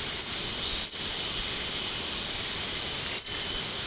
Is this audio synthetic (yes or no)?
yes